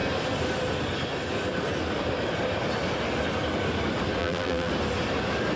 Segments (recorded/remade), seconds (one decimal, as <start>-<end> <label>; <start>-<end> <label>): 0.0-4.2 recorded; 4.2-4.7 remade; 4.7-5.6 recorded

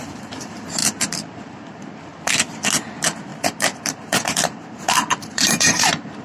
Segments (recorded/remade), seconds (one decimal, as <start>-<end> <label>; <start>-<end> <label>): 0.0-2.1 remade; 2.1-2.8 recorded; 2.8-6.2 remade

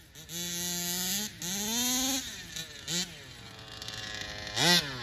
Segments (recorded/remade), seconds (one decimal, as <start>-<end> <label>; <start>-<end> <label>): 0.0-5.0 recorded

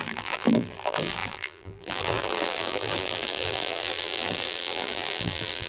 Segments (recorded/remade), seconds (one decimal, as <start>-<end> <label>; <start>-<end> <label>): 0.0-5.7 remade

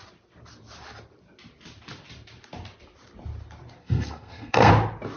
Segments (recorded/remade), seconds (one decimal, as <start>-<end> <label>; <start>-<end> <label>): 0.0-3.8 recorded; 3.8-4.7 remade; 4.7-5.2 recorded